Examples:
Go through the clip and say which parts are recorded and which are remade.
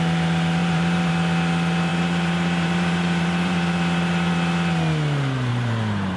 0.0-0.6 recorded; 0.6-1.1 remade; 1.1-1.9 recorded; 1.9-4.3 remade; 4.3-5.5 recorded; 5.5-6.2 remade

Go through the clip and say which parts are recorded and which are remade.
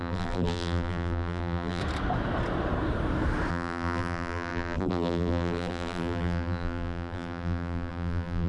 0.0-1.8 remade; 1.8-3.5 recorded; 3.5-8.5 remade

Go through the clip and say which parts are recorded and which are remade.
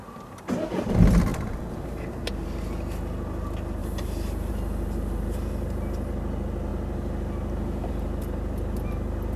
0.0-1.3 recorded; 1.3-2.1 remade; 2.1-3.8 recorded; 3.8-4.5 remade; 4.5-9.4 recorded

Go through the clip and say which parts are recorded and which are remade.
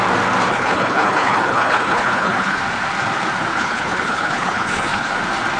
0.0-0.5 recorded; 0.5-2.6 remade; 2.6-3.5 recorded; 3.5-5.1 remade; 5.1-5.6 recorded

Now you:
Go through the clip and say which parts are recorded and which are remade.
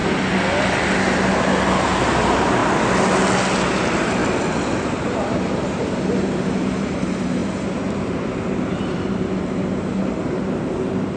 0.0-2.0 recorded; 2.0-2.6 remade; 2.6-3.6 recorded; 3.6-4.2 remade; 4.2-5.2 recorded; 5.2-11.2 remade